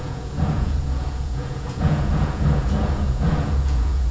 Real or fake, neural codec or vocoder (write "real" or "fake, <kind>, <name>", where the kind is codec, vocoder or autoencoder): fake, vocoder, Vocos